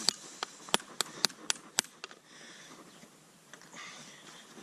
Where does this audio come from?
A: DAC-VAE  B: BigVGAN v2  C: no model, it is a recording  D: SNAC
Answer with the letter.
C